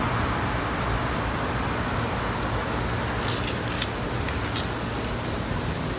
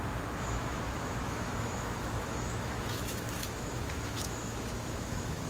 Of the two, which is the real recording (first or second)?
first